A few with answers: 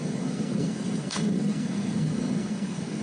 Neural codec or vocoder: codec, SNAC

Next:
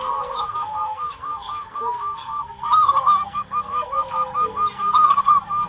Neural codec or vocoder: codec, SNAC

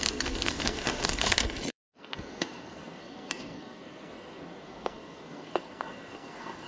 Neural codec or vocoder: codec, SNAC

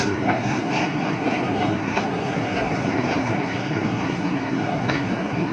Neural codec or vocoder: codec, SNAC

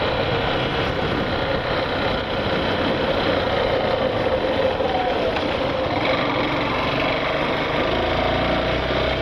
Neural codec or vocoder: none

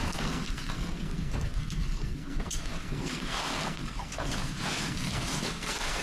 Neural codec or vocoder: codec, SNAC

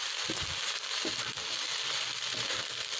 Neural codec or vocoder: none